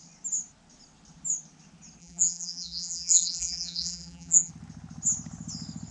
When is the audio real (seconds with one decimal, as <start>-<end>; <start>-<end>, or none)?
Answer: 0.0-2.0; 4.5-5.9